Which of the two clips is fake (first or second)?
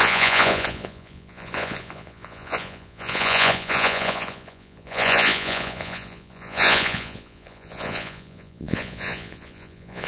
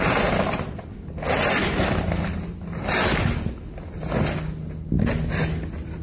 first